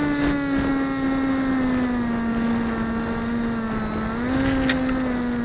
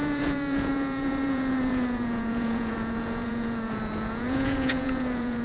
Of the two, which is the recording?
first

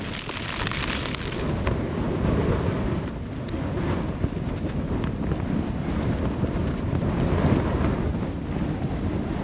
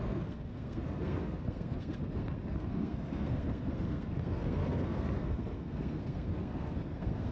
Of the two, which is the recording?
first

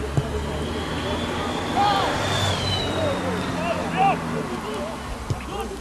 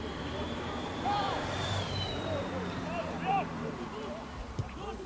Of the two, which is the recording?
first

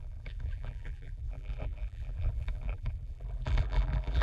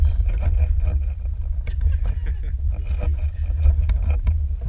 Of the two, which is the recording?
second